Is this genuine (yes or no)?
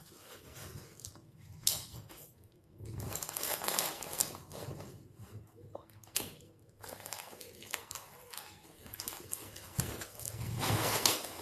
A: no